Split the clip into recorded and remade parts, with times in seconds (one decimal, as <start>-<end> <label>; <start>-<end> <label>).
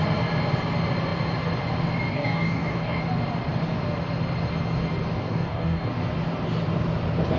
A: 0.0-2.1 recorded; 2.1-3.0 remade; 3.0-5.2 recorded; 5.2-5.9 remade; 5.9-7.4 recorded